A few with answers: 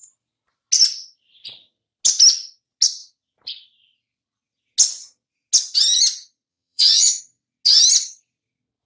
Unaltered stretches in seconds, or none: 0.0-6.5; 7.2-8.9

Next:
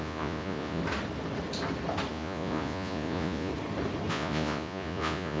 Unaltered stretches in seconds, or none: 0.8-2.1; 3.5-4.1

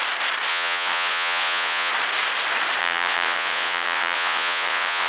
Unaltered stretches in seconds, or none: 0.0-0.5; 1.9-2.8

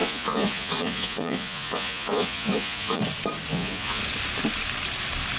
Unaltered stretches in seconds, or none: 3.0-3.5; 4.0-5.4

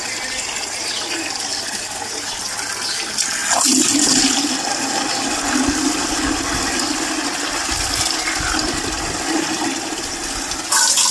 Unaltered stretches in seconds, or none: 0.0-11.1

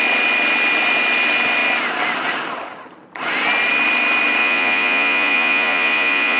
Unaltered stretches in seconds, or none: 0.0-4.4

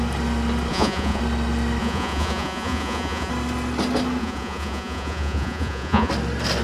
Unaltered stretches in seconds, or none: 0.0-0.7; 1.2-1.8; 3.3-4.2; 6.1-6.6